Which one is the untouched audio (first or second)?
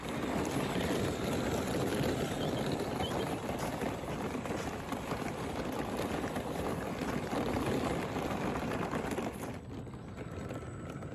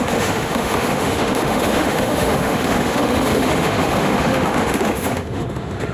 first